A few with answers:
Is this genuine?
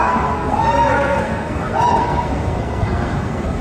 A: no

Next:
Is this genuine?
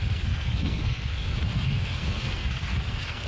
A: no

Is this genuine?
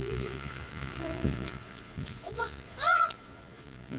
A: no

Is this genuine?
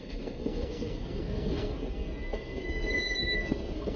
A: no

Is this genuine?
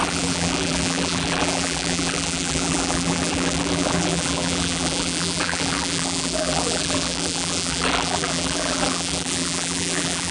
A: no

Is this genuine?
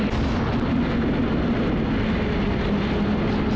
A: yes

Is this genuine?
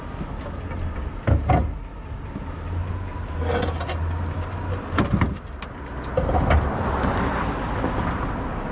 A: yes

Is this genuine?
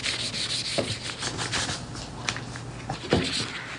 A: yes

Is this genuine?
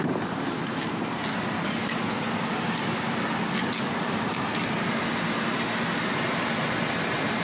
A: yes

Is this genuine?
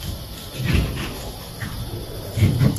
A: no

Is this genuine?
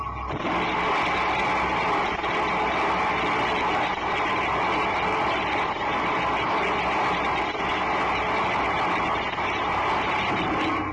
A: yes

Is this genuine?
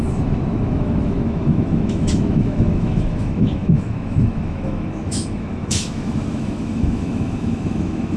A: no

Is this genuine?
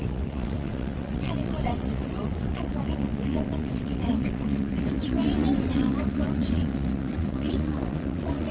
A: no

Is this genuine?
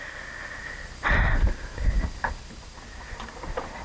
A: yes